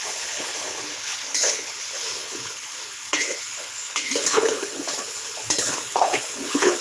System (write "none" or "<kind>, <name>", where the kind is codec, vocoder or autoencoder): codec, HILCodec